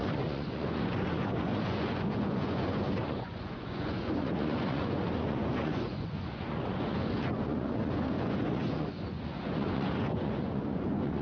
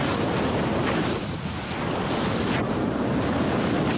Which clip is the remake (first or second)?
first